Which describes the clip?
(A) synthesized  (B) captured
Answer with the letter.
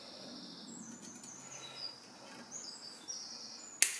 B